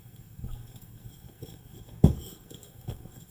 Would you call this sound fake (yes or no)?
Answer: yes